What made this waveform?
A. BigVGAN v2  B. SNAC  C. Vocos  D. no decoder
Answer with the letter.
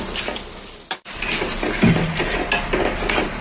D